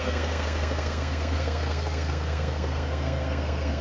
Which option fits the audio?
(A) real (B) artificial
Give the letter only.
B